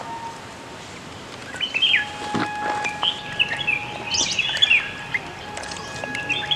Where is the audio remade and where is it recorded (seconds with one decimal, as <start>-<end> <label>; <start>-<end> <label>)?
0.0-6.6 recorded